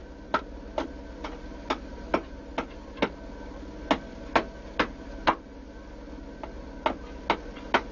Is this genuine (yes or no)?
yes